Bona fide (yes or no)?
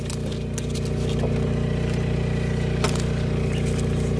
yes